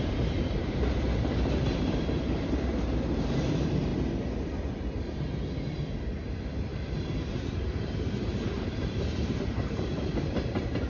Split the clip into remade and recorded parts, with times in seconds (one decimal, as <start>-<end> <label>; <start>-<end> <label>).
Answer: 0.0-3.9 remade; 3.9-6.3 recorded; 6.3-10.9 remade